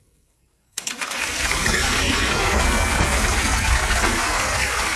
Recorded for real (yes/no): no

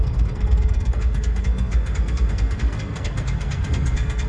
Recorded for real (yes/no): no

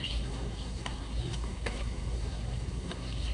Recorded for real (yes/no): no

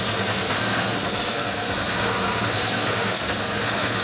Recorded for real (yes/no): no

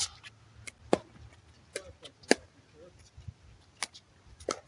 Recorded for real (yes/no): yes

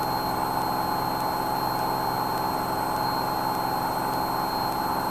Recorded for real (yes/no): yes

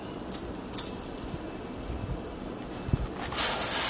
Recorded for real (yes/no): yes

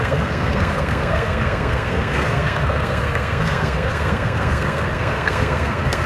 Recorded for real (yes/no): no